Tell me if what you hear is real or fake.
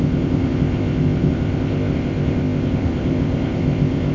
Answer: fake